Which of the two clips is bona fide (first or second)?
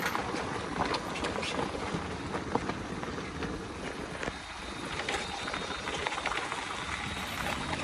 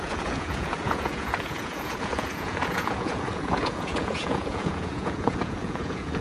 first